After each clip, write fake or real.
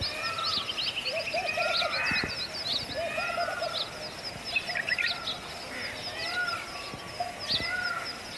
real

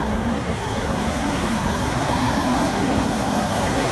fake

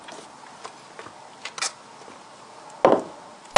real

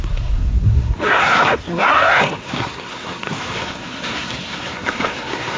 fake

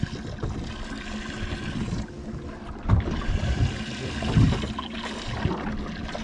real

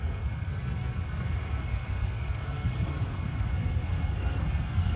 fake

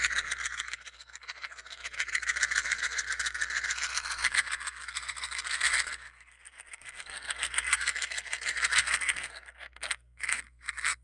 fake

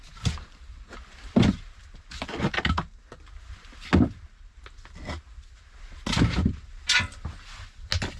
real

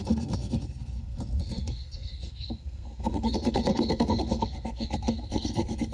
fake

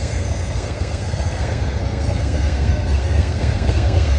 fake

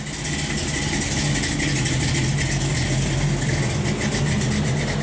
real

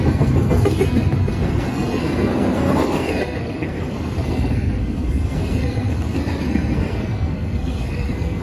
fake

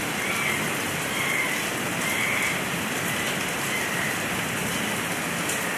real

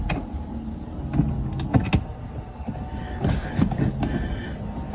real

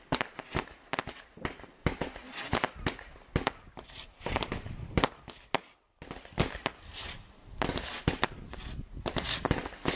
real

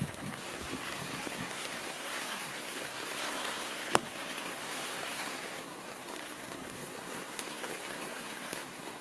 fake